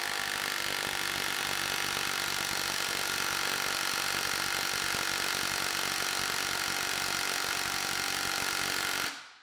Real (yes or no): yes